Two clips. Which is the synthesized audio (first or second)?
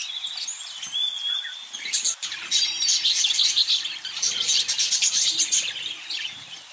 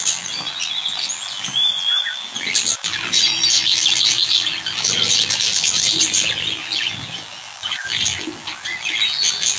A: second